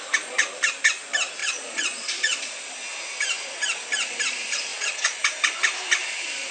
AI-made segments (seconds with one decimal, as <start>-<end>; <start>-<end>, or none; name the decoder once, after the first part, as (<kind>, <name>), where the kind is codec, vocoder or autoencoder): 1.4-2.6 (vocoder, Vocos); 4.7-5.2